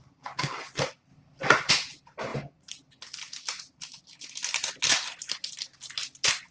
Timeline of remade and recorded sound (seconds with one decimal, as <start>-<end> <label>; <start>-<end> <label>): 0.0-0.7 remade; 0.7-6.5 recorded